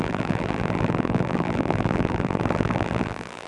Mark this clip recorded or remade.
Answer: remade